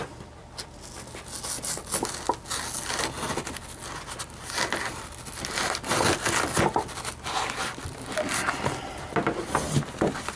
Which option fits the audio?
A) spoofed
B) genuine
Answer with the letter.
B